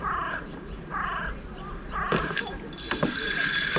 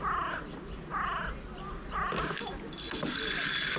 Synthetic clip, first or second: first